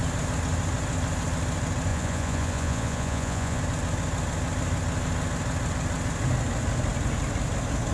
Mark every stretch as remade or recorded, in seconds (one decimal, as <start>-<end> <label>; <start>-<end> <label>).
0.0-1.9 recorded; 1.9-3.6 remade; 3.6-7.9 recorded